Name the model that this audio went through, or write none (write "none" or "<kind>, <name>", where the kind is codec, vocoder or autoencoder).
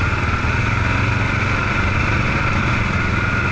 none